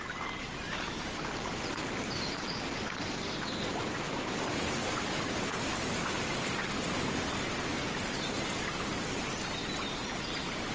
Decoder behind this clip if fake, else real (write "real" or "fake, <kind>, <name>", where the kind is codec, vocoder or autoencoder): real